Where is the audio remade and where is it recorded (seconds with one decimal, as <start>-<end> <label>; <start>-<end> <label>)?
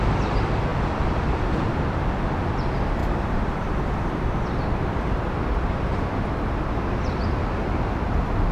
0.0-0.7 recorded; 0.7-2.0 remade; 2.0-3.0 recorded; 3.0-4.8 remade; 4.8-8.5 recorded